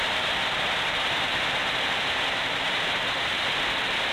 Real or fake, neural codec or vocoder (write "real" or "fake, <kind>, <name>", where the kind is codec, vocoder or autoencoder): fake, vocoder, BigVGAN v2